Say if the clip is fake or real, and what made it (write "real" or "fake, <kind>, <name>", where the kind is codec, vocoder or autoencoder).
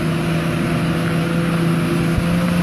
real